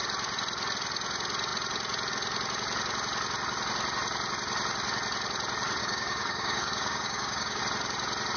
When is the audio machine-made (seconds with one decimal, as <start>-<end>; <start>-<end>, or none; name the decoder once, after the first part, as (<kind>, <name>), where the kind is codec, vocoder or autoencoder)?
5.8-7.6 (codec, DAC)

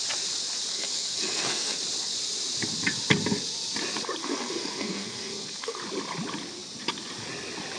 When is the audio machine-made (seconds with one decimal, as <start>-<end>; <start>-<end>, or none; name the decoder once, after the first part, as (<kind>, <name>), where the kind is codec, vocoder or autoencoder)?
0.7-1.8 (codec, SNAC); 4.2-5.8